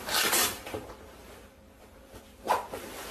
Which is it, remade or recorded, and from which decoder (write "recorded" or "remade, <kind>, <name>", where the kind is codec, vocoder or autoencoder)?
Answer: remade, vocoder, BigVGAN v2